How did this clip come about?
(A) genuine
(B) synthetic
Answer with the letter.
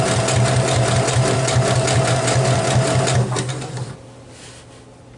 A